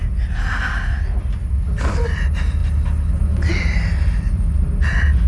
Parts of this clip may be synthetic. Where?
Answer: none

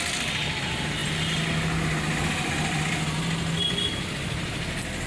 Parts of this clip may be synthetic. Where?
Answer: none

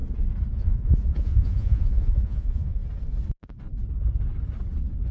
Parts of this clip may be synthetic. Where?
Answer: 0.5-2.8

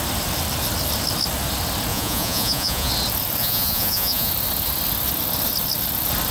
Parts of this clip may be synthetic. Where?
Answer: 1.9-2.9; 3.4-4.3

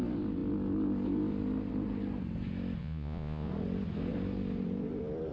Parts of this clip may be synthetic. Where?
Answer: 2.8-3.5

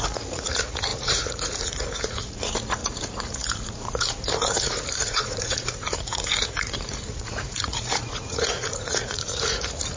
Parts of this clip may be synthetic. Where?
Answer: 0.0-10.0

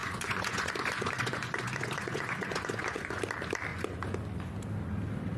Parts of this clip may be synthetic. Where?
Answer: 0.0-3.2; 3.7-4.2

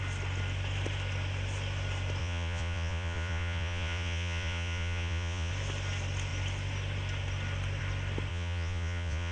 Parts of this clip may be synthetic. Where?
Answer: 2.2-5.5; 8.3-9.3